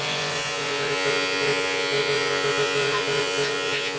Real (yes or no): no